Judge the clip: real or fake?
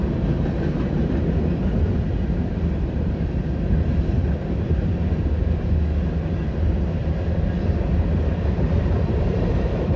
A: fake